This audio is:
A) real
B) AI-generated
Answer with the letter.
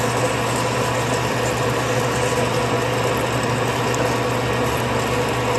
A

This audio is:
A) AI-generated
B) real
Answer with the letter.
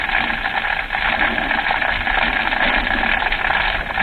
B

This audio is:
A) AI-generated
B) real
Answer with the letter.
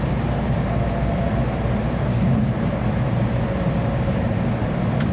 B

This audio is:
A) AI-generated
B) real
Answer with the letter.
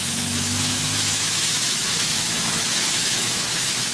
A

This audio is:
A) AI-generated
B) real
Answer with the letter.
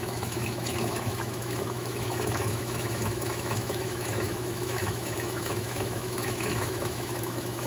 A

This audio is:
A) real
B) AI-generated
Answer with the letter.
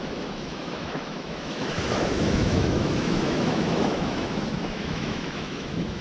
B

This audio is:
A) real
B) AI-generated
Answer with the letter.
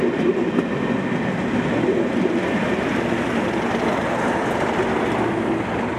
A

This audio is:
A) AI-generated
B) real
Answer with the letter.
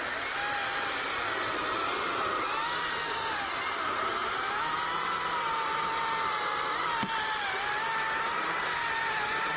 B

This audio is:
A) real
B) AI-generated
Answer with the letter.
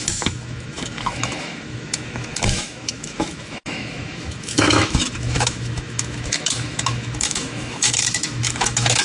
B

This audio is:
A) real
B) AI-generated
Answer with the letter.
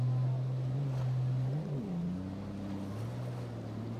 A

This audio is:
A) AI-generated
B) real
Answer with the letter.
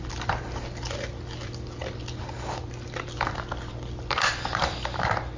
B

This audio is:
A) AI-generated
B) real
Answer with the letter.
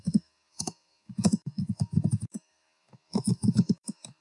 A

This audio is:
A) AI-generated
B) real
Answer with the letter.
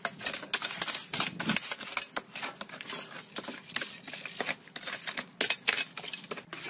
B